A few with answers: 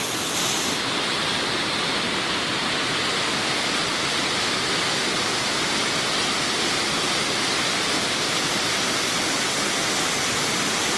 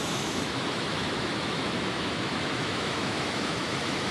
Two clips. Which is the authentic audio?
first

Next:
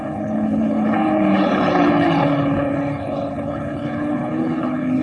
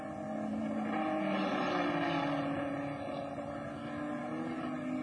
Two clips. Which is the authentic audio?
second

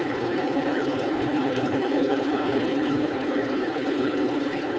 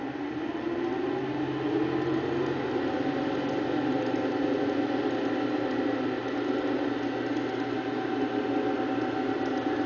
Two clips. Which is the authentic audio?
second